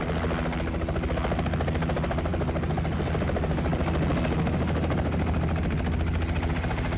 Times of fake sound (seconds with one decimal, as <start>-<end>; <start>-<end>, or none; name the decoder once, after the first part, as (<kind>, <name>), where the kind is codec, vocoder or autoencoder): none